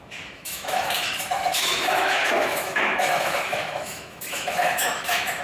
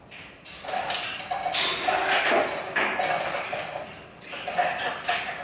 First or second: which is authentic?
second